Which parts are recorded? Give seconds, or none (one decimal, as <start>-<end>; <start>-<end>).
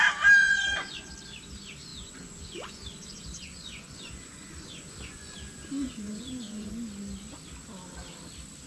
0.0-0.4; 1.1-1.9; 6.7-8.7